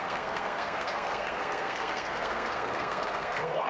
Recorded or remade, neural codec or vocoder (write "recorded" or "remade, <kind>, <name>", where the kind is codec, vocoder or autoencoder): remade, codec, SNAC